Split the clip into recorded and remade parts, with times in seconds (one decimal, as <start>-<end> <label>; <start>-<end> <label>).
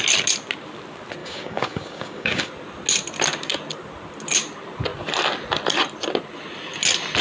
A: 0.0-1.2 recorded; 1.2-2.5 remade; 2.5-7.2 recorded